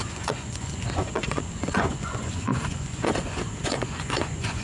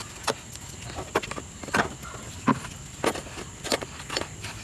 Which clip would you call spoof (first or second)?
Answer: first